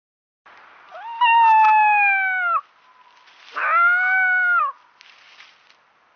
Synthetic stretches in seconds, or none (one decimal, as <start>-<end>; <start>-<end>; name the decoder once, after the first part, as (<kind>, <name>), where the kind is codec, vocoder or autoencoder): none